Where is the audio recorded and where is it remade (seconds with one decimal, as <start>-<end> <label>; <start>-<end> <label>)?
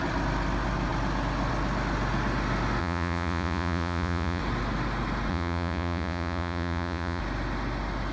0.0-2.8 recorded; 2.8-4.4 remade; 4.4-5.3 recorded; 5.3-7.2 remade; 7.2-8.1 recorded